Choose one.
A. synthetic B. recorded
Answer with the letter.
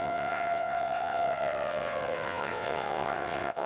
A